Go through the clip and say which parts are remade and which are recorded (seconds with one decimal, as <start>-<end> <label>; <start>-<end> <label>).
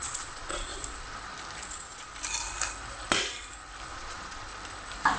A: 0.0-0.7 remade; 0.7-1.7 recorded; 1.7-2.1 remade; 2.1-3.9 recorded; 3.9-4.5 remade; 4.5-5.2 recorded